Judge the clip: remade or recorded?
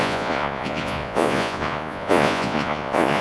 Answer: remade